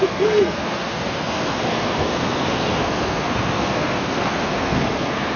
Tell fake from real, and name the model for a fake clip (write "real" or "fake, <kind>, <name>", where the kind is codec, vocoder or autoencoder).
fake, codec, SNAC